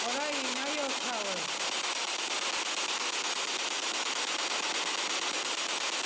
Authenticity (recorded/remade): recorded